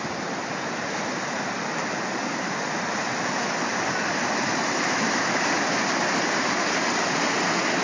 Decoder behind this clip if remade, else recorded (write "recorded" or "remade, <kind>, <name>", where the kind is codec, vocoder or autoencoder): recorded